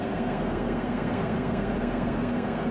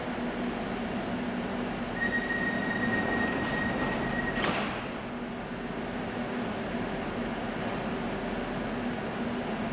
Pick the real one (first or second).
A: second